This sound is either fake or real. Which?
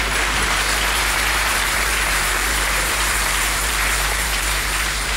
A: fake